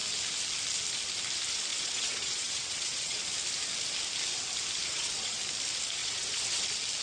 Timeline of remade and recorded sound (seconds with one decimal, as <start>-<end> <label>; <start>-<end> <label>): 0.0-1.7 recorded; 1.7-3.2 remade; 3.2-4.9 recorded; 4.9-5.4 remade; 5.4-6.0 recorded; 6.0-6.6 remade; 6.6-7.0 recorded